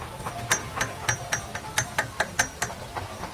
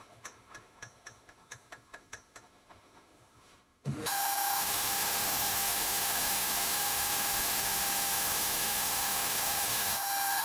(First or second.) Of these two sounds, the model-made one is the second